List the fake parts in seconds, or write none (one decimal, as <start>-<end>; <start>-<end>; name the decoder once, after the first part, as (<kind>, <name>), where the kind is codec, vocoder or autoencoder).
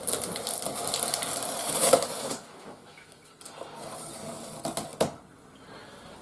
1.6-3.3 (autoencoder, DAC-VAE)